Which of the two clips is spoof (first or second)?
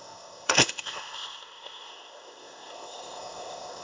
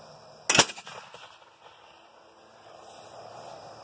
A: first